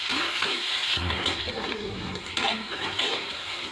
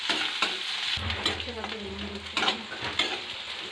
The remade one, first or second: first